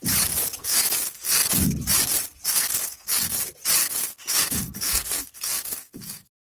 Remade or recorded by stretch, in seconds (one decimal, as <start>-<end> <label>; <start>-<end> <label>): 0.0-0.6 recorded; 0.6-1.5 remade; 1.5-2.5 recorded; 2.5-3.4 remade; 3.4-3.8 recorded; 3.8-6.6 remade